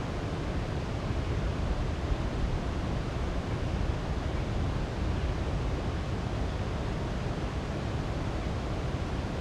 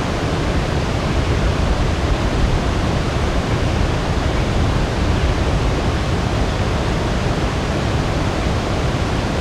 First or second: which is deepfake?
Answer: second